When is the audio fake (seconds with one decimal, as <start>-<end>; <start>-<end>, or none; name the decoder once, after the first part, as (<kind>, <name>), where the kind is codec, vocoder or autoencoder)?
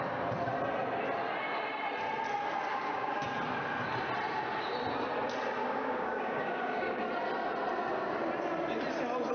2.7-3.3 (codec, DAC); 5.6-7.0